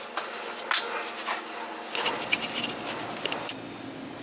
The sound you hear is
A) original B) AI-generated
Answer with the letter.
A